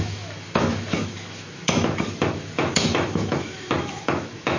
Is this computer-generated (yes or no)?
yes